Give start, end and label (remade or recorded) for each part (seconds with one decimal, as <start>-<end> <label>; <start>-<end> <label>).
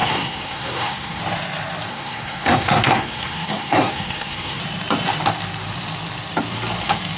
0.0-1.2 remade; 1.2-1.9 recorded; 1.9-4.6 remade; 4.6-7.2 recorded